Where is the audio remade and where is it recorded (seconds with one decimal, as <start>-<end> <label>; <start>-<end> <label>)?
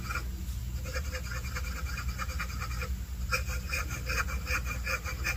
0.0-0.6 recorded; 0.6-3.8 remade; 3.8-5.4 recorded